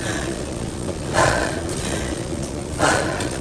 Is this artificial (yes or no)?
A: yes